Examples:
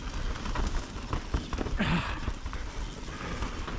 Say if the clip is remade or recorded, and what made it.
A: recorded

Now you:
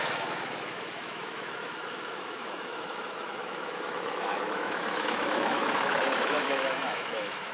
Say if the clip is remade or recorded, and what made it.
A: remade, autoencoder, DAC-VAE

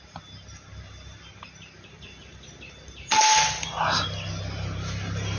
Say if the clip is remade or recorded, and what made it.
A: recorded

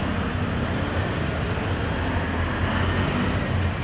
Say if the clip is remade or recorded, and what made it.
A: recorded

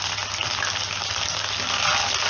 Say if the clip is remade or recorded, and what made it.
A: recorded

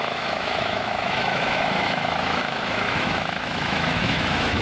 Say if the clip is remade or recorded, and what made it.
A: remade, autoencoder, DAC-VAE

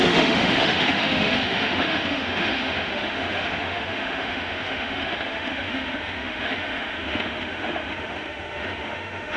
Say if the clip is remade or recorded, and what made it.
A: remade, autoencoder, DAC-VAE